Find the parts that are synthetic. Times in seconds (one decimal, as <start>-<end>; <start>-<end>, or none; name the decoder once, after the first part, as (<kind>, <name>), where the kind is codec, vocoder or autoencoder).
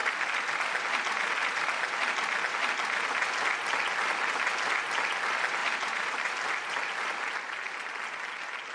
5.6-6.9 (vocoder, BigVGAN v2)